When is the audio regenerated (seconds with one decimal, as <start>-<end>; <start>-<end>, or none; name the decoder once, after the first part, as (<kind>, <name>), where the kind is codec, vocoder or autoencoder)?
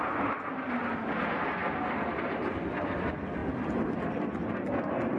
none